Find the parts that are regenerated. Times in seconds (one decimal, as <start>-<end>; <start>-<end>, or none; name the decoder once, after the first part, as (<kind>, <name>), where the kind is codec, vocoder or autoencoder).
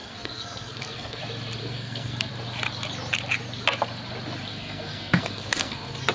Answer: 0.0-1.2 (codec, SNAC); 1.6-2.3; 4.5-6.1